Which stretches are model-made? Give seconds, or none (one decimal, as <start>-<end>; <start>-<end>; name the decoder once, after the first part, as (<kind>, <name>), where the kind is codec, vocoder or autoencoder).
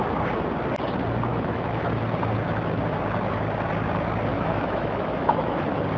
1.3-1.8 (autoencoder, DAC-VAE); 4.3-5.6